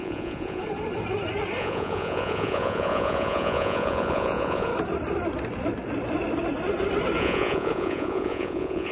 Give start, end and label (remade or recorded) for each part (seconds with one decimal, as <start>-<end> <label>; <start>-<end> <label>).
0.0-0.6 remade; 0.6-1.6 recorded; 1.6-4.7 remade; 4.7-7.2 recorded; 7.2-8.9 remade